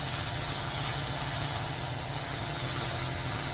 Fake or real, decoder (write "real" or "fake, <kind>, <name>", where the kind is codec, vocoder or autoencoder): fake, vocoder, HiFi-GAN